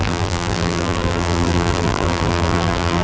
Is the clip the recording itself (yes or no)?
no